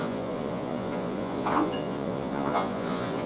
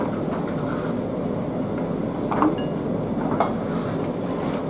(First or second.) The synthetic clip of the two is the first